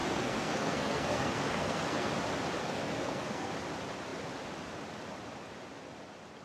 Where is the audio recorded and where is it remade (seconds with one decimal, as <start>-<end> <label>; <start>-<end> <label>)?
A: 0.0-2.1 remade; 2.1-2.6 recorded; 2.6-3.5 remade; 3.5-6.4 recorded